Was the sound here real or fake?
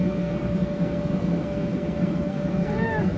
fake